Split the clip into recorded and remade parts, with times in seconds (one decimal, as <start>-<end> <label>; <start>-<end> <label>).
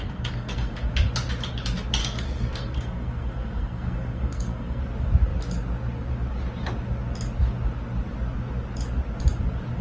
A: 0.0-0.9 remade; 0.9-2.0 recorded; 2.0-4.8 remade; 4.8-9.8 recorded